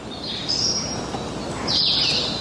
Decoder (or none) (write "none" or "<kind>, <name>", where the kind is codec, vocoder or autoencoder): none